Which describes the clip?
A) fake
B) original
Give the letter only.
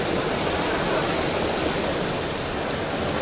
B